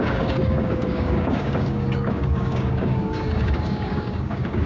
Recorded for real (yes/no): no